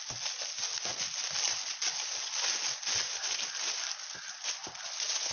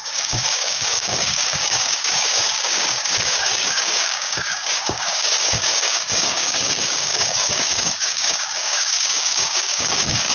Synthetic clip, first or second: second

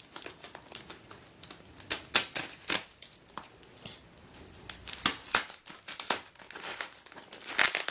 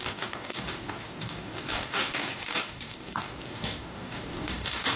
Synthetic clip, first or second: second